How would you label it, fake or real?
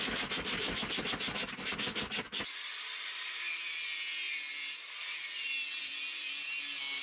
real